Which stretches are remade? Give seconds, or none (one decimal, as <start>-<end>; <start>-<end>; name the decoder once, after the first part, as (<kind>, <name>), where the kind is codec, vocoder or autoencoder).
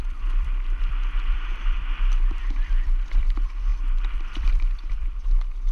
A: 0.0-5.7 (vocoder, BigVGAN v2)